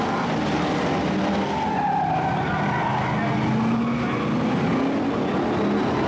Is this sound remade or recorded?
recorded